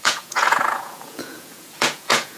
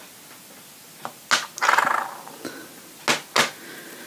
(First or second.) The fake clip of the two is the first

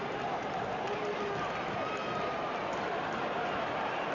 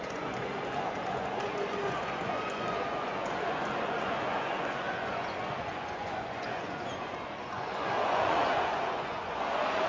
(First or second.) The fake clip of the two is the second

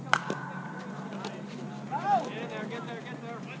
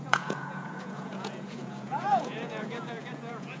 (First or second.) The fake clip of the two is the second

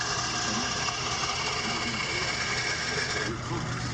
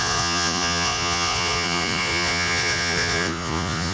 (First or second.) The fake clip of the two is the second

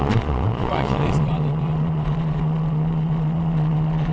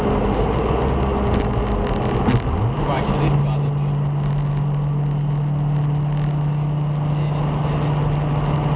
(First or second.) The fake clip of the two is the first